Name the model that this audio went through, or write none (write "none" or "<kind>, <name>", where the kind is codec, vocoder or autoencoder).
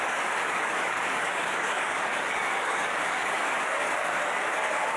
codec, DAC